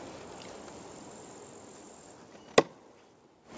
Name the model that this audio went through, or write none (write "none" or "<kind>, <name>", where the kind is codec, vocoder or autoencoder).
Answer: none